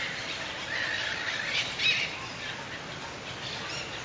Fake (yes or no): no